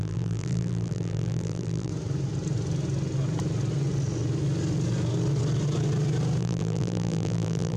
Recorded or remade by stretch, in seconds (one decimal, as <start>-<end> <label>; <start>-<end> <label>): 0.0-1.9 remade; 1.9-6.4 recorded; 6.4-7.8 remade